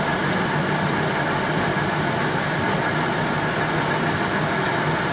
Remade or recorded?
recorded